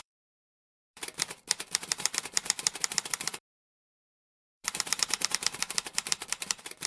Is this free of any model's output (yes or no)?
no